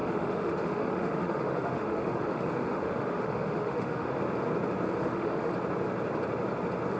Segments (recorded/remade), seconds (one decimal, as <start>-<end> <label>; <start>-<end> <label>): 0.0-4.2 remade; 4.2-5.0 recorded; 5.0-5.5 remade; 5.5-7.0 recorded